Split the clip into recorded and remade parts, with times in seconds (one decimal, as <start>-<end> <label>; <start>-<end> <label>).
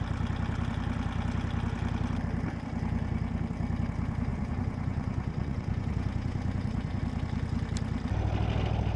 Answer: 0.0-4.3 recorded; 4.3-7.0 remade; 7.0-9.0 recorded